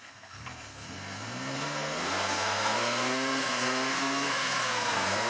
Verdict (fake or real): fake